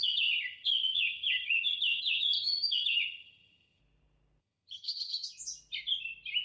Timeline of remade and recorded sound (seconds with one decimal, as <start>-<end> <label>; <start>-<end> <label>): 0.0-3.8 remade; 3.8-4.4 recorded; 4.4-5.4 remade; 5.4-6.4 recorded

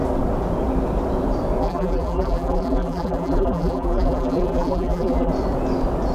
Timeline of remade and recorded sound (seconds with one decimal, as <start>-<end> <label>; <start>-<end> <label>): 0.0-1.6 recorded; 1.6-5.3 remade; 5.3-6.1 recorded

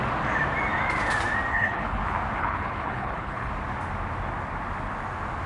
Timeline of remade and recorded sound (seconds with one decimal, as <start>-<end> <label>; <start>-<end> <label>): 0.0-1.5 recorded; 1.5-2.0 remade; 2.0-2.4 recorded; 2.4-3.5 remade; 3.5-5.5 recorded

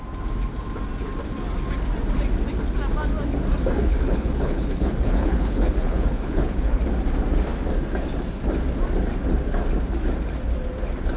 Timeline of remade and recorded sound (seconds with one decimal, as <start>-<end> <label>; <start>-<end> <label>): 0.0-3.8 recorded; 3.8-6.8 remade; 6.8-11.2 recorded

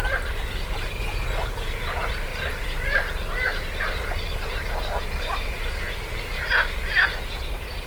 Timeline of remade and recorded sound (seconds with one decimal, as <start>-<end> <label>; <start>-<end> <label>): 0.0-7.9 recorded